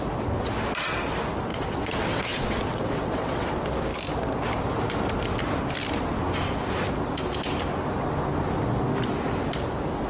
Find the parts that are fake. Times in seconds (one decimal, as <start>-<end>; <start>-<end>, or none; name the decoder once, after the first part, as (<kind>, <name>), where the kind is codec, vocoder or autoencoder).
1.5-3.5 (vocoder, WaveNeXt)